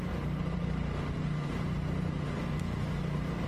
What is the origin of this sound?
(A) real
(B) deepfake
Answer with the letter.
B